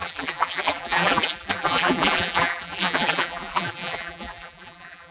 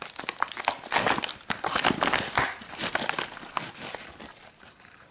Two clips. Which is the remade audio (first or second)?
first